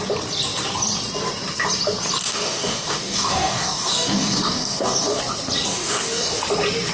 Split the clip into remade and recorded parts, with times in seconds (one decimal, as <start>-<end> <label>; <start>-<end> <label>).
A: 0.0-2.2 recorded; 2.2-5.2 remade; 5.2-5.7 recorded; 5.7-6.4 remade; 6.4-6.9 recorded